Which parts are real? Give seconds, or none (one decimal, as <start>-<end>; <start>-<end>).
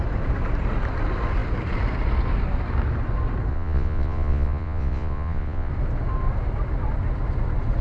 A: 0.0-3.5; 5.7-7.8